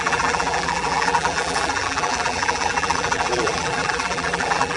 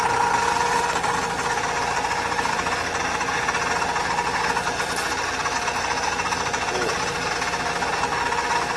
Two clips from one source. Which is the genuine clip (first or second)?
second